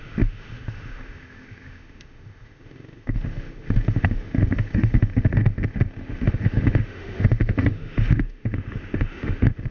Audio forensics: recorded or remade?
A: remade